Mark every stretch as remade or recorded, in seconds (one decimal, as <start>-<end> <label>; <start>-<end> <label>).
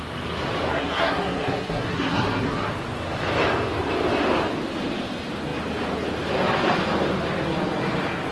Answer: 0.0-0.7 recorded; 0.7-2.7 remade; 2.7-8.3 recorded